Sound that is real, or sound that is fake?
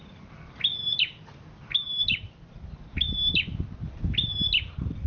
real